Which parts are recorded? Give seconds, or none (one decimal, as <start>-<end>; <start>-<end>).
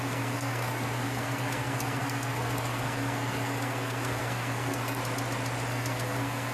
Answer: 5.0-5.7